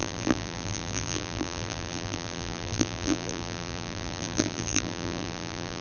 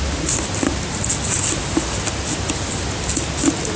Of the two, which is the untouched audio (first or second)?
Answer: second